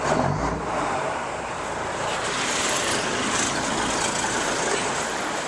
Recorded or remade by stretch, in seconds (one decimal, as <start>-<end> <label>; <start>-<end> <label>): 0.0-0.4 recorded; 0.4-3.0 remade; 3.0-5.5 recorded

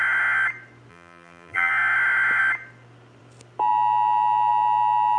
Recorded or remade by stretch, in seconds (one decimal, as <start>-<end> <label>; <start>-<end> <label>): 0.0-0.9 recorded; 0.9-1.7 remade; 1.7-5.2 recorded

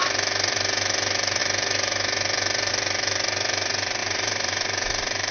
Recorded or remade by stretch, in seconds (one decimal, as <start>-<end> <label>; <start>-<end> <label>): 0.0-4.0 recorded; 4.0-5.3 remade

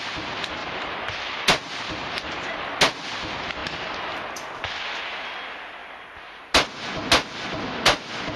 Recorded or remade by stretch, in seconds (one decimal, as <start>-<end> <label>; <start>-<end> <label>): 0.0-0.6 recorded; 0.6-1.4 remade; 1.4-8.4 recorded

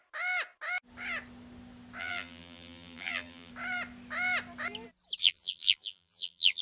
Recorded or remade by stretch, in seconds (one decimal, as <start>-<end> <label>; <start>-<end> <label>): 0.0-2.0 recorded; 2.0-3.5 remade; 3.5-5.2 recorded; 5.2-6.6 remade

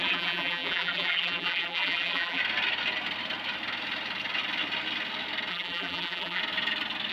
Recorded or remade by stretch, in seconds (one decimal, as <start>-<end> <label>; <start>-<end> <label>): 0.0-2.4 remade; 2.4-5.5 recorded; 5.5-6.4 remade; 6.4-7.1 recorded